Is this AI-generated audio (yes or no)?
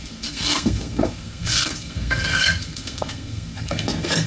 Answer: yes